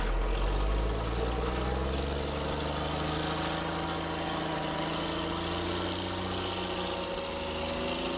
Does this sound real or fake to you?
real